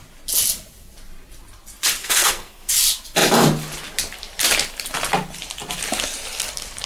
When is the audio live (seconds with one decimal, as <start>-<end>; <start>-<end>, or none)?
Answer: 0.0-2.0; 2.7-6.9